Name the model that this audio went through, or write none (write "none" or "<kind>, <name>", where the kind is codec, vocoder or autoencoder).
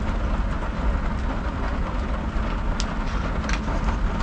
none